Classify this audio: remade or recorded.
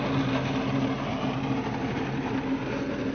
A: recorded